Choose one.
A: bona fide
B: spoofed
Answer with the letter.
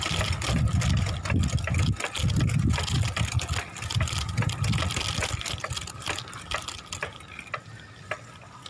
A